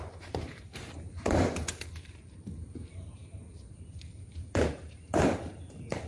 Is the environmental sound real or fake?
fake